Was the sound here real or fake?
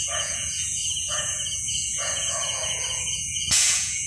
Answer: fake